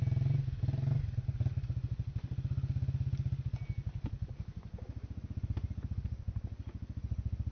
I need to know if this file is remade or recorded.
recorded